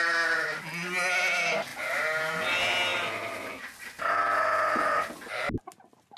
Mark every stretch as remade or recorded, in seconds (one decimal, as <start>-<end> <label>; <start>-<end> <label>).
0.0-6.2 recorded